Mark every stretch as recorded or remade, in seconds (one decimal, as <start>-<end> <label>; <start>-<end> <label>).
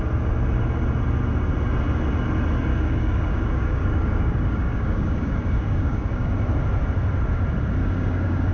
0.0-2.7 recorded; 2.7-6.3 remade; 6.3-7.8 recorded; 7.8-8.5 remade